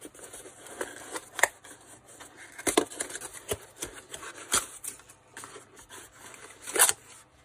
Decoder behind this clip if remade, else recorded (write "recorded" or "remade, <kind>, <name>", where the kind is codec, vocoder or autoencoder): recorded